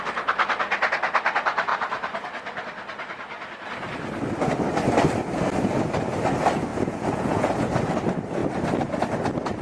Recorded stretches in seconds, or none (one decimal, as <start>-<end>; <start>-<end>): 0.0-6.7; 7.5-9.6